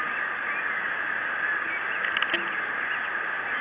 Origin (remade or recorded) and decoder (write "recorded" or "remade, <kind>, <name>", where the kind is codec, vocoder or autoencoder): recorded